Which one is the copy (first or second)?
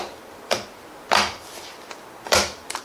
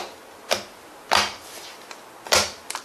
first